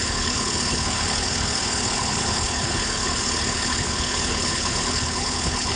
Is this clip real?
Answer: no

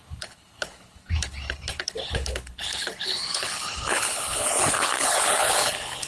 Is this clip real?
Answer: no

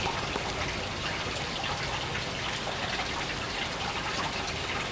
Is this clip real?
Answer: yes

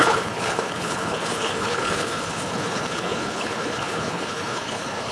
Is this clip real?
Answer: no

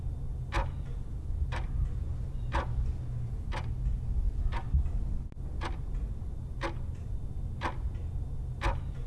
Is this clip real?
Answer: yes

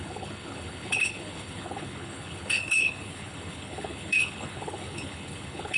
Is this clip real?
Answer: no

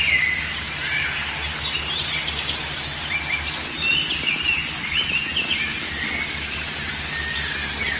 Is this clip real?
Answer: yes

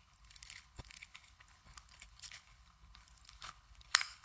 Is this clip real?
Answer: no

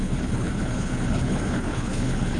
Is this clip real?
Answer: no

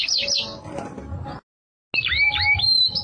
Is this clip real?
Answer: yes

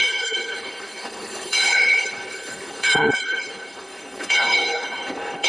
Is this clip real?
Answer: no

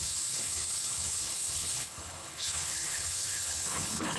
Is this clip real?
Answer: no